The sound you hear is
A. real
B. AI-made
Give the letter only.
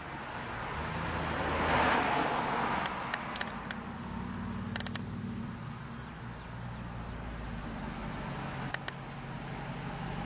A